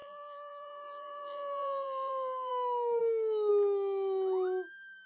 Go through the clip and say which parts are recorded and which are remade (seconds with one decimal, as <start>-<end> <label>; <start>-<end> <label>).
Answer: 0.0-2.5 remade; 2.5-5.1 recorded